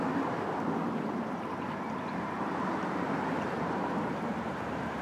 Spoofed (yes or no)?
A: yes